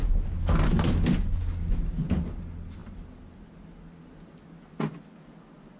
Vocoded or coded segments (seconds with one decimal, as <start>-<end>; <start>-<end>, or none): none